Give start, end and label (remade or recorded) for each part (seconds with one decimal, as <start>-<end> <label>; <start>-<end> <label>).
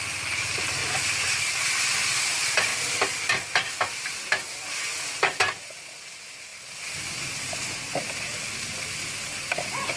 0.0-0.8 recorded; 0.8-1.4 remade; 1.4-10.0 recorded